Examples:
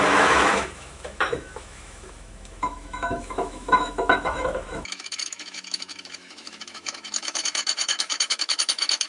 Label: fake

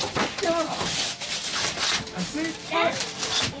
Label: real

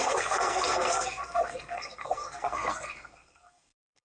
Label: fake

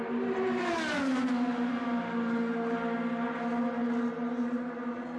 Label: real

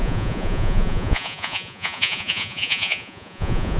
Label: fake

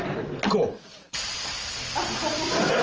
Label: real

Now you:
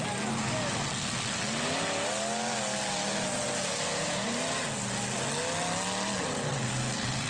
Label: real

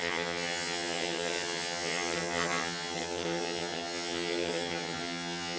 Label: fake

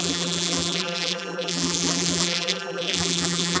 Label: fake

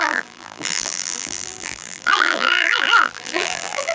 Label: fake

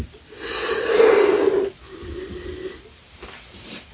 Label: real